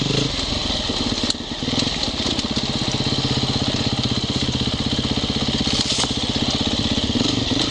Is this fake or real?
real